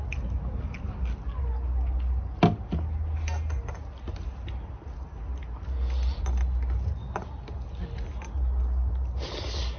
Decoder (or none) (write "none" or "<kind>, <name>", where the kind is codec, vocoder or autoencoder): none